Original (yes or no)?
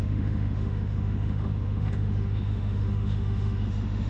no